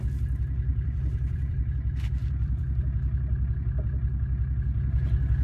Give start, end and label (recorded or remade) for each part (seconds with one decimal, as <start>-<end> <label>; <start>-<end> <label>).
0.0-0.7 recorded; 0.7-1.6 remade; 1.6-2.2 recorded; 2.2-2.8 remade; 2.8-5.4 recorded